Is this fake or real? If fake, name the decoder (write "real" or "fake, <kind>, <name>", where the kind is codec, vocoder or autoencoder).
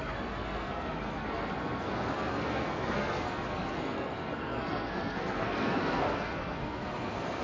fake, codec, SNAC